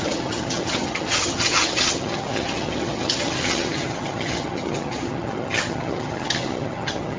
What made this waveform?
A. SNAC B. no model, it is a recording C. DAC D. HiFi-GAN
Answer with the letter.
D